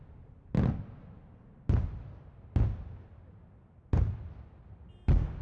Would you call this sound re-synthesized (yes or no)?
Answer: no